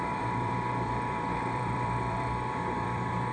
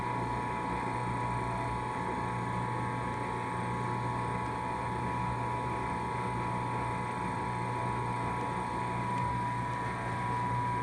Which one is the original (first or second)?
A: second